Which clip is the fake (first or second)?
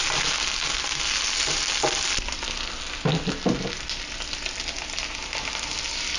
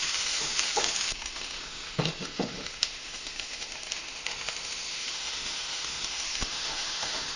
second